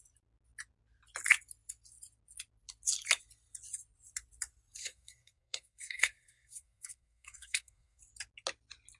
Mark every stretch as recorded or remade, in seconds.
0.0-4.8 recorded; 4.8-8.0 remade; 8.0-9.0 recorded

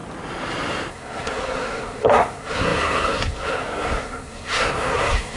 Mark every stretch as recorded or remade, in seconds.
0.0-0.9 recorded; 0.9-5.4 remade

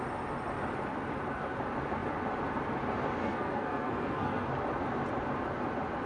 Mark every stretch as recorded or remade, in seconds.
0.0-3.2 recorded; 3.2-4.5 remade; 4.5-6.1 recorded

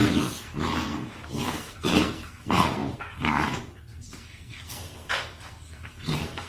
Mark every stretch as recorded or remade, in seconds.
0.0-6.5 remade

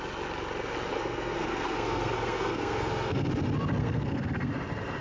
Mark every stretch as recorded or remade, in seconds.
0.0-0.9 recorded; 0.9-3.3 remade; 3.3-3.8 recorded; 3.8-4.5 remade; 4.5-5.0 recorded

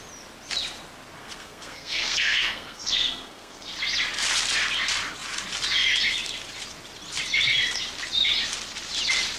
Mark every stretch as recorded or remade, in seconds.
0.0-1.2 recorded; 1.2-3.7 remade; 3.7-9.4 recorded

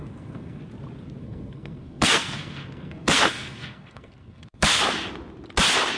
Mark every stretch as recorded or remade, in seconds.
0.0-0.6 remade; 0.6-1.2 recorded; 1.2-4.8 remade; 4.8-6.0 recorded